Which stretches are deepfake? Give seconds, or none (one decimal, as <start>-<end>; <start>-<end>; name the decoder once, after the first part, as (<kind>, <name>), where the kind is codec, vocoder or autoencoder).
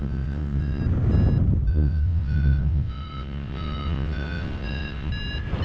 0.0-0.8 (vocoder, WaveNeXt); 1.7-5.1